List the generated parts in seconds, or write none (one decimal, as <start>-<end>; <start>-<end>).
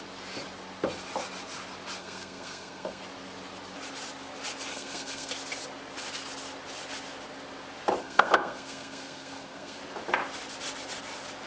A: 2.0-3.0; 4.7-5.3; 8.0-9.8